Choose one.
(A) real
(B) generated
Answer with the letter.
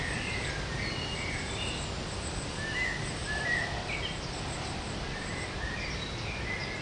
A